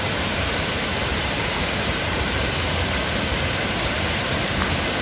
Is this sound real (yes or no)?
no